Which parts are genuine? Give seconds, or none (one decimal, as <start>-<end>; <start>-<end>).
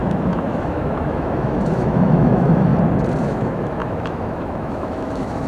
2.7-3.2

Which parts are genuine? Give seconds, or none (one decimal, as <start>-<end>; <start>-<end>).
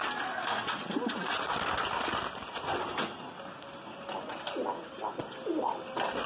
0.0-6.3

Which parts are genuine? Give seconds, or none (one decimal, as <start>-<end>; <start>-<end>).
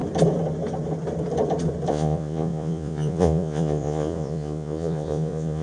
0.0-1.9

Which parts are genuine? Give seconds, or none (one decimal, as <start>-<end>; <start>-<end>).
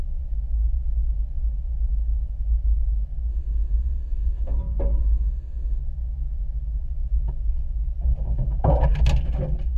0.0-3.3; 4.6-5.0; 5.8-9.8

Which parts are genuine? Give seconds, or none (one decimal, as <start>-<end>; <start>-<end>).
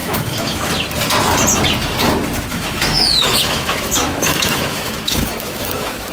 0.7-2.5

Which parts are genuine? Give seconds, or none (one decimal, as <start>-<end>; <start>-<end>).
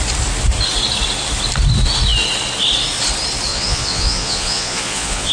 0.0-3.5